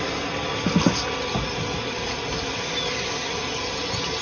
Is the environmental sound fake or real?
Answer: real